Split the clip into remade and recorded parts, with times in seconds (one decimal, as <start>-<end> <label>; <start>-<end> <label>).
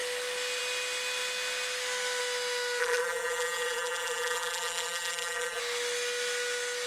0.0-2.8 recorded; 2.8-5.6 remade; 5.6-6.9 recorded